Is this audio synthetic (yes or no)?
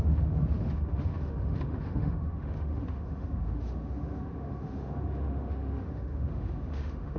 yes